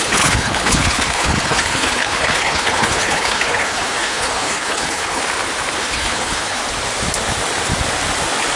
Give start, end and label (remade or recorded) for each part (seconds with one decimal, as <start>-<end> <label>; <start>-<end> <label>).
0.0-5.2 remade; 5.2-5.8 recorded; 5.8-6.6 remade; 6.6-8.6 recorded

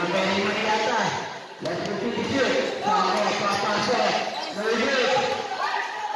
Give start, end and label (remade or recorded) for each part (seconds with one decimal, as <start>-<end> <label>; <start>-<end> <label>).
0.0-6.2 recorded

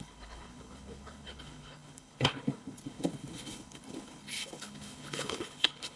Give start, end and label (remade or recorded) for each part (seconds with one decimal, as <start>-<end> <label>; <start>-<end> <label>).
0.0-6.0 remade

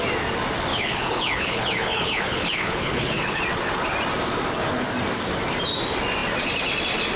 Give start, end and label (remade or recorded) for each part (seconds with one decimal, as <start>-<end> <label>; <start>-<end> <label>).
0.0-0.7 recorded; 0.7-3.4 remade; 3.4-7.2 recorded

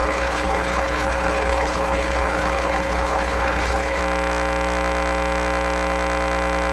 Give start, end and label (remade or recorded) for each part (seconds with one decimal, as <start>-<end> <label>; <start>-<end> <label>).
0.0-4.0 remade; 4.0-6.7 recorded

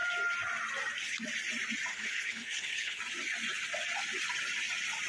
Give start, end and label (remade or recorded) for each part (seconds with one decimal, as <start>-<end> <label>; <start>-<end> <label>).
0.0-1.9 recorded; 1.9-3.0 remade; 3.0-5.1 recorded

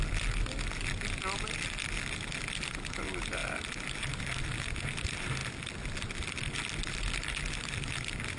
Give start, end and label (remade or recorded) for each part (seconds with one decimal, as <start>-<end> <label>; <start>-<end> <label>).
0.0-8.4 recorded

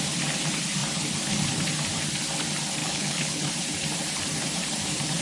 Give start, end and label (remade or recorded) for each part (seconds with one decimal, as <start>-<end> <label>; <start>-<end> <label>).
0.0-2.8 recorded; 2.8-3.5 remade; 3.5-5.2 recorded